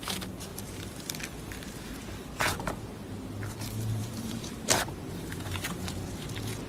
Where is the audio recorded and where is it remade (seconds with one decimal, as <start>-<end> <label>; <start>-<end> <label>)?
0.0-0.5 recorded; 0.5-1.1 remade; 1.1-4.0 recorded; 4.0-6.3 remade; 6.3-6.7 recorded